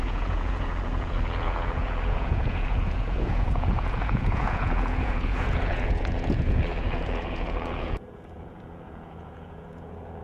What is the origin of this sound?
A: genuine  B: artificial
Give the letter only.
B